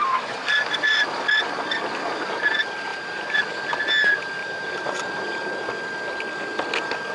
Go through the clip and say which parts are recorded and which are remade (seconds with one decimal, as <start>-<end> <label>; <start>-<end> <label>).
0.0-0.5 remade; 0.5-2.9 recorded; 2.9-3.4 remade; 3.4-4.4 recorded; 4.4-5.5 remade; 5.5-7.1 recorded